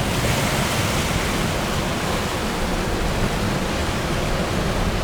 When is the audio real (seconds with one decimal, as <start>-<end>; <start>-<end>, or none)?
0.0-3.8; 4.3-5.0